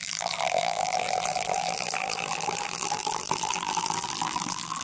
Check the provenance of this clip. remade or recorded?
remade